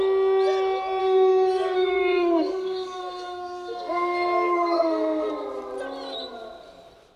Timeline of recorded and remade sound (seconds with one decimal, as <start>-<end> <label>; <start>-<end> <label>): 0.0-1.0 recorded; 1.0-5.3 remade; 5.3-7.2 recorded